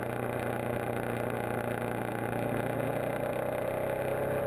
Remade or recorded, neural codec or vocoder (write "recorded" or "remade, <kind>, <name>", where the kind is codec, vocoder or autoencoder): recorded